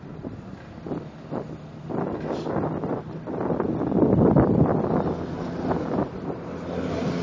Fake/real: real